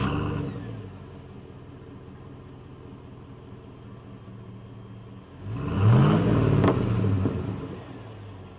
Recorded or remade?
recorded